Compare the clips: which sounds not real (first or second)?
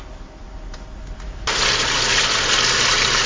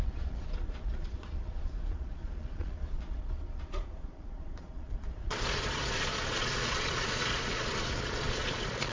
second